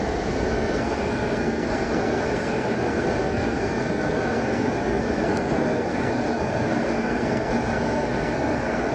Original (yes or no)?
no